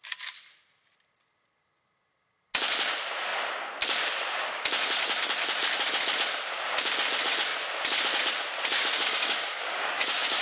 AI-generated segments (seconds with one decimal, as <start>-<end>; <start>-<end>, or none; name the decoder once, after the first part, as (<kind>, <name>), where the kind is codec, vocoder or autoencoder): 8.9-10.4 (codec, DAC)